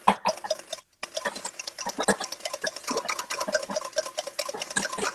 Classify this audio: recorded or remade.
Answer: recorded